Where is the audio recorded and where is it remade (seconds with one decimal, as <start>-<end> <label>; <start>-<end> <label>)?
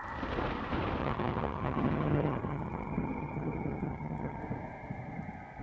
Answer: 0.0-1.0 recorded; 1.0-4.4 remade; 4.4-5.6 recorded